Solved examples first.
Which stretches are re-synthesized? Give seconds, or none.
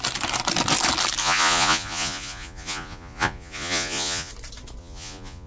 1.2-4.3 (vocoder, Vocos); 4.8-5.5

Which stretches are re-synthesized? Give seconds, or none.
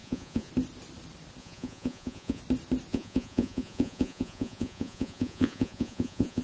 0.0-0.5 (vocoder, Vocos); 1.4-2.4; 2.9-6.4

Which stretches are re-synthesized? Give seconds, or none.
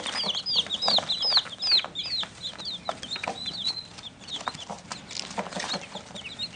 none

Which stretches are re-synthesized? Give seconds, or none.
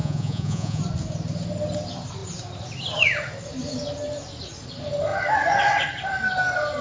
0.0-0.8 (vocoder, Vocos)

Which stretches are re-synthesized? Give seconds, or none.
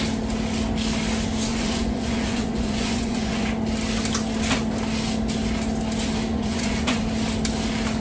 1.5-3.5 (vocoder, Vocos); 6.3-7.0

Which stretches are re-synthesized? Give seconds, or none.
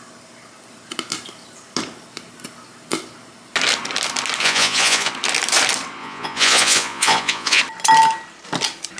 4.4-5.1 (vocoder, Vocos); 6.0-7.6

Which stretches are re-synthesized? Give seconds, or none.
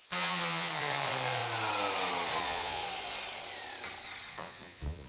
0.0-1.4 (vocoder, Vocos); 2.4-2.8; 4.3-5.1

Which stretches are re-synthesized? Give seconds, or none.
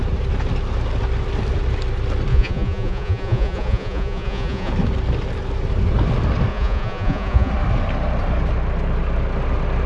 2.3-4.7 (vocoder, Vocos); 6.5-7.5